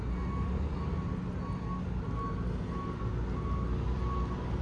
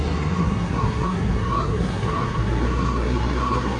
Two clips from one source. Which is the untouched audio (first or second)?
first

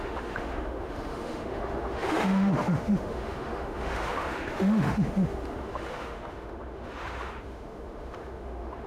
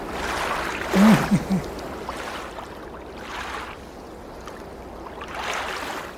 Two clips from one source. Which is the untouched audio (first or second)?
second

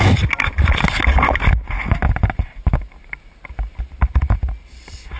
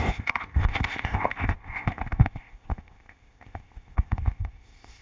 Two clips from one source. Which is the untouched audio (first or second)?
first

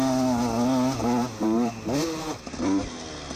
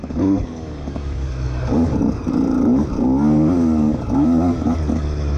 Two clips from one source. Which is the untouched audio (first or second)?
first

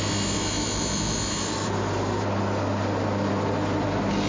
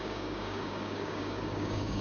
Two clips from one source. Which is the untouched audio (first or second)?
first